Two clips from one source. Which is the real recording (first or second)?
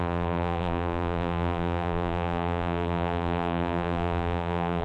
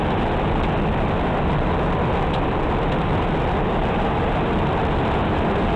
second